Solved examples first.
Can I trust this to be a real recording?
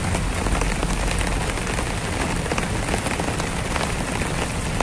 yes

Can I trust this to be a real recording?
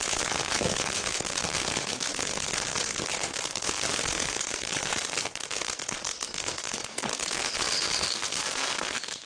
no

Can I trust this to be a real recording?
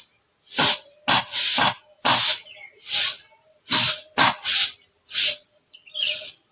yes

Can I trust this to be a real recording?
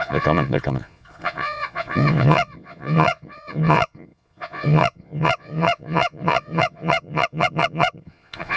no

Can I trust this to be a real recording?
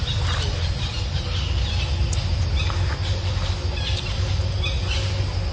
yes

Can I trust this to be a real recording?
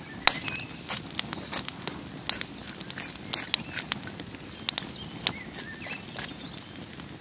yes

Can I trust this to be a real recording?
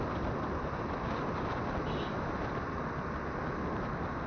yes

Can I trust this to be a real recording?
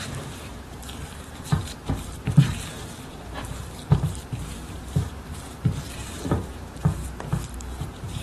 no